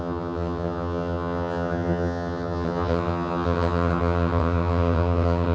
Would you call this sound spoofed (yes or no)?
yes